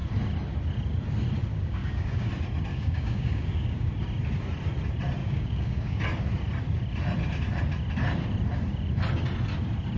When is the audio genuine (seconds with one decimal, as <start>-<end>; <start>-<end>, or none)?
0.0-1.5; 2.3-2.7; 3.9-5.2; 6.0-10.0